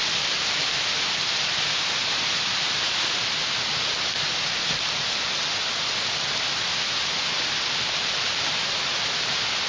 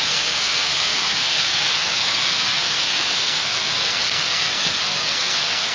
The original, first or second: first